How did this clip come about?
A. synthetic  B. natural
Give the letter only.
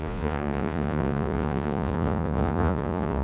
A